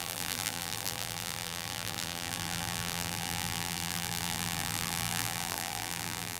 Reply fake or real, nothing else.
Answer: fake